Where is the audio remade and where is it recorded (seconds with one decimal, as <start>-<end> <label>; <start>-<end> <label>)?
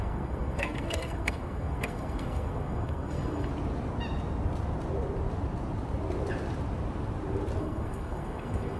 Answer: 0.0-3.5 remade; 3.5-7.6 recorded; 7.6-8.8 remade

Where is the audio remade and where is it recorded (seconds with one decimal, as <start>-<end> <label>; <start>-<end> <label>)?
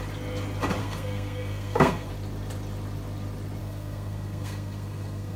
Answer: 0.0-0.8 recorded; 0.8-2.1 remade; 2.1-3.6 recorded; 3.6-5.4 remade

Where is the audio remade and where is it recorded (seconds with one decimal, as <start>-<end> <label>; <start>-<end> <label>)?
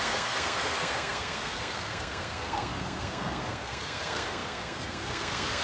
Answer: 0.0-5.6 remade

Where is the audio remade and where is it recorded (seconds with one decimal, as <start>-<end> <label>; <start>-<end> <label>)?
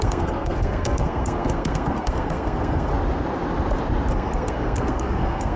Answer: 0.0-2.9 remade; 2.9-4.1 recorded; 4.1-5.6 remade